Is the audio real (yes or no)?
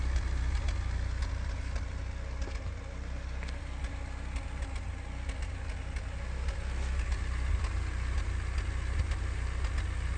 yes